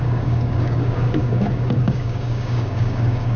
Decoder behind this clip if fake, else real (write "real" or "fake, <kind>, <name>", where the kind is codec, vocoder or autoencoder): fake, codec, DAC